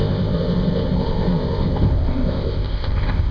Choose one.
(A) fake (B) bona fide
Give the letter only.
A